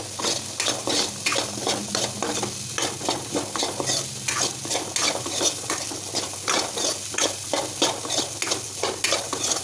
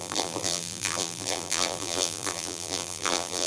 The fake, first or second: second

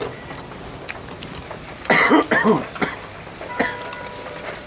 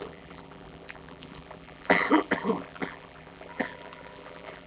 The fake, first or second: second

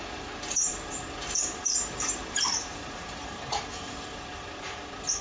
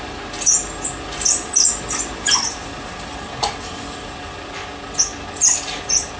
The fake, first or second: first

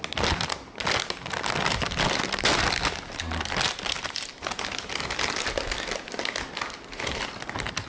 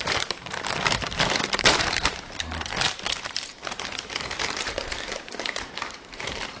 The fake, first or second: second